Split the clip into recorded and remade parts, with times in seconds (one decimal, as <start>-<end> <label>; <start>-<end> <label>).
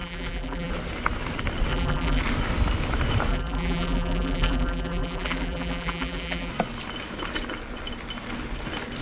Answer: 0.0-0.7 remade; 0.7-1.7 recorded; 1.7-2.2 remade; 2.2-3.3 recorded; 3.3-6.5 remade; 6.5-9.0 recorded